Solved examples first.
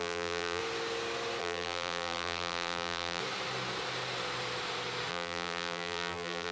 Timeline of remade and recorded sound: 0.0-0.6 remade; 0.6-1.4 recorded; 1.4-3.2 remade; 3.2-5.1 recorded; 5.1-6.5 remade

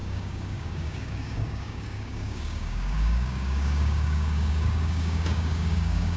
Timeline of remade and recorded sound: 0.0-6.2 remade

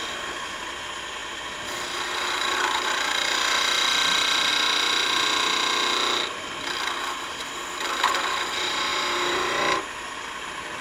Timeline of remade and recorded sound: 0.0-8.9 recorded; 8.9-9.8 remade; 9.8-10.8 recorded

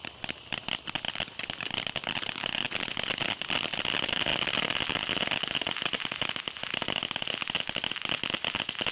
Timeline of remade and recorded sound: 0.0-8.9 recorded

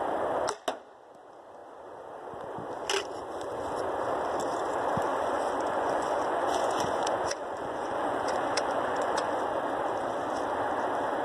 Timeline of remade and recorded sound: 0.0-5.1 recorded; 5.1-9.4 remade; 9.4-11.2 recorded

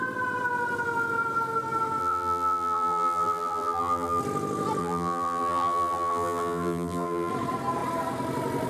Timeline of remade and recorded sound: 0.0-2.0 recorded; 2.0-4.2 remade; 4.2-4.8 recorded; 4.8-7.3 remade; 7.3-8.7 recorded